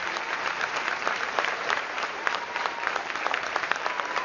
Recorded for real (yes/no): no